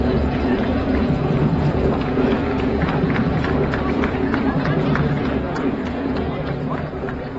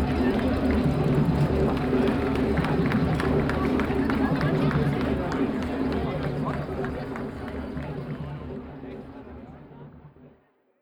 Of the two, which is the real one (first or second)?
second